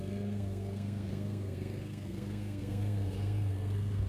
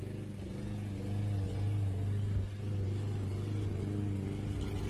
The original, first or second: second